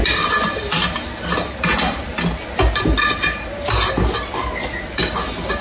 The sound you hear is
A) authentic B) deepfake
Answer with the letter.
A